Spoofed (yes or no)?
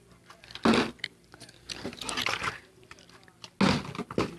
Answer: no